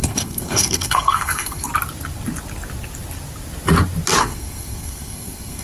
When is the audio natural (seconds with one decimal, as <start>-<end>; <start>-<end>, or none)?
1.7-4.2